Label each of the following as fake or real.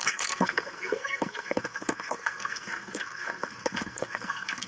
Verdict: fake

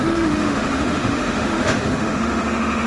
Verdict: fake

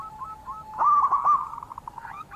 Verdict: real